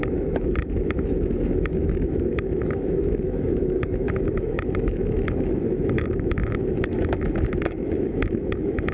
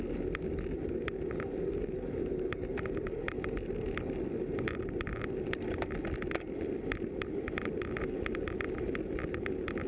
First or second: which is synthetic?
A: first